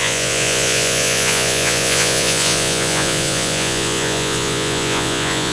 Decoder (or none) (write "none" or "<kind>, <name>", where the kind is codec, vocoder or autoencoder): vocoder, Vocos